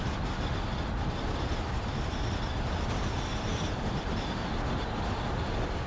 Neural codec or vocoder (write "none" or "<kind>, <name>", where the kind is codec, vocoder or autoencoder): none